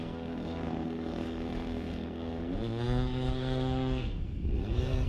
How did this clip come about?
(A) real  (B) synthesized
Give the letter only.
B